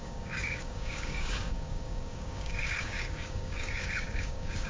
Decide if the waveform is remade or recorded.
remade